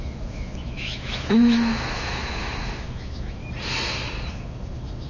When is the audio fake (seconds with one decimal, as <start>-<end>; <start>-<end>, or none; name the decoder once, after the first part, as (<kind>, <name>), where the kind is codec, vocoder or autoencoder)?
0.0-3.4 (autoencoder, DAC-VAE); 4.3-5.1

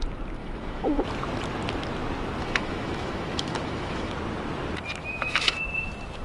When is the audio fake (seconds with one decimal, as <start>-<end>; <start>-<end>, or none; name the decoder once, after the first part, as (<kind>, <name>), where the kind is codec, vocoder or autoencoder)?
0.4-1.0 (autoencoder, DAC-VAE); 2.4-4.1; 5.0-5.6

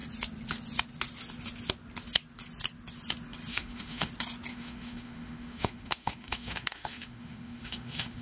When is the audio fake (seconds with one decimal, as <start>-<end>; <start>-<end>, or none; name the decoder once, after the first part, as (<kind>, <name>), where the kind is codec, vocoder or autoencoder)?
3.5-4.1 (autoencoder, DAC-VAE); 4.5-8.2

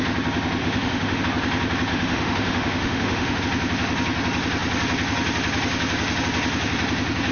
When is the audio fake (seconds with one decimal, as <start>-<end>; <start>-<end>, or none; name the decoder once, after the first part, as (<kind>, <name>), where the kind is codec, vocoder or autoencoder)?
0.6-1.2 (autoencoder, DAC-VAE); 1.9-3.4

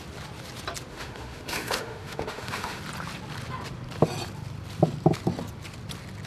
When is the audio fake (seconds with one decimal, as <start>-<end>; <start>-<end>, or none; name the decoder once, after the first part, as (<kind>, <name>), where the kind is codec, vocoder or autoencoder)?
0.9-2.8 (autoencoder, DAC-VAE)

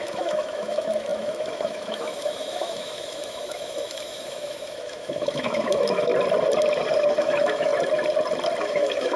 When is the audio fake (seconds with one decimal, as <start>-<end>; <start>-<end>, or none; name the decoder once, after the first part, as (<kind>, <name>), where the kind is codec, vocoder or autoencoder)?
0.0-6.1 (autoencoder, DAC-VAE); 7.2-7.7; 8.6-9.2

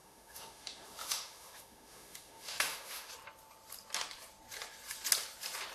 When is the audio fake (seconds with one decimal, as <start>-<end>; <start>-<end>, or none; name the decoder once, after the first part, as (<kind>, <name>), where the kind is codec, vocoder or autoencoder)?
0.0-3.1 (autoencoder, DAC-VAE)

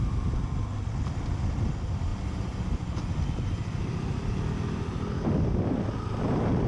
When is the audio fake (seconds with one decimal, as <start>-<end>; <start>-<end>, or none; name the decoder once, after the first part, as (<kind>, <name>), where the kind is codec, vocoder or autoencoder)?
none